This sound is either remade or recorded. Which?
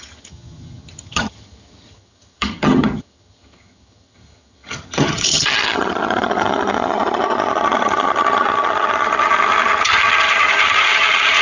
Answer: remade